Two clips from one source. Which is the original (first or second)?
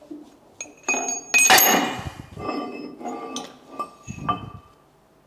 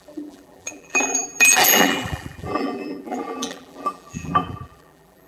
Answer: first